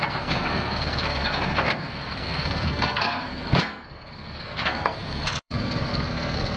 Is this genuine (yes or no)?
no